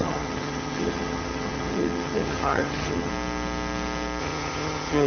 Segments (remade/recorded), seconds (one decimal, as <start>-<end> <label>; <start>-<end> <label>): 0.0-3.1 remade; 3.1-4.2 recorded; 4.2-5.1 remade